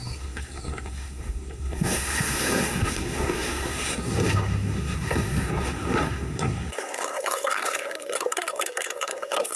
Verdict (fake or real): fake